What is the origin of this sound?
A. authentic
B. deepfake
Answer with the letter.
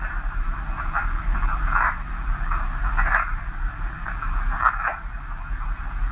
A